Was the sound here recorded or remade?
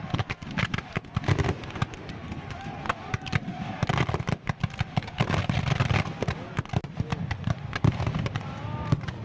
recorded